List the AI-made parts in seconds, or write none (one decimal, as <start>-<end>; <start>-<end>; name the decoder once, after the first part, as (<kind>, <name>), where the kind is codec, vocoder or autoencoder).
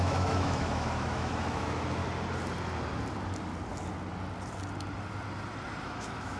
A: 0.0-2.0 (autoencoder, DAC-VAE); 5.8-6.4